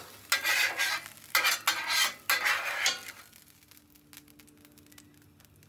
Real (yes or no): yes